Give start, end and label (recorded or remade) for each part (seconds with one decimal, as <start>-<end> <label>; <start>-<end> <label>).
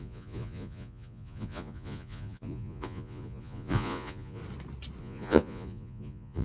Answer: 0.0-4.4 remade; 4.4-5.0 recorded; 5.0-6.4 remade